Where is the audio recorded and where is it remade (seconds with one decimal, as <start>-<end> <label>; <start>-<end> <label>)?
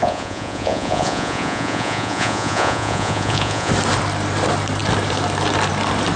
0.0-3.7 remade; 3.7-6.2 recorded